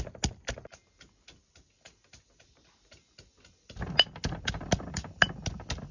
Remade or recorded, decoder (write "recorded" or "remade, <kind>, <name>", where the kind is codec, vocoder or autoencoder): recorded